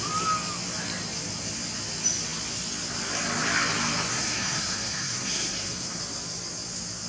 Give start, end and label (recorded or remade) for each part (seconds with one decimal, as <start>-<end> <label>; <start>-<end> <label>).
0.0-4.1 recorded; 4.1-6.0 remade; 6.0-7.1 recorded